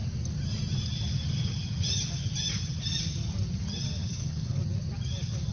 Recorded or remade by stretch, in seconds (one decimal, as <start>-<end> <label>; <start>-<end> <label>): 0.0-4.0 recorded; 4.0-4.6 remade; 4.6-5.5 recorded